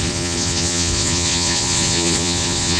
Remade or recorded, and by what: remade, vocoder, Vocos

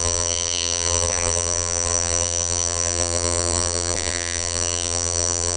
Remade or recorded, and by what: remade, vocoder, BigVGAN v2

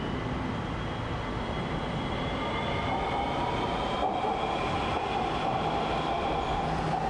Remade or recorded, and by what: recorded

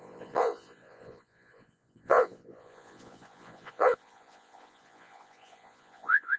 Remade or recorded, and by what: remade, vocoder, Vocos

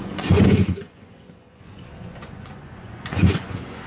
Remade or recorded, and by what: remade, vocoder, Vocos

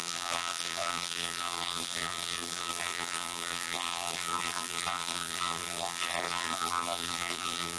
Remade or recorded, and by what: remade, vocoder, BigVGAN v2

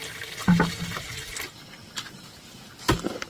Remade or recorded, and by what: recorded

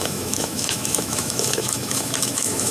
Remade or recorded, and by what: remade, autoencoder, DAC-VAE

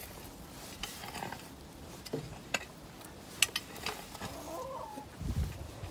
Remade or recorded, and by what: recorded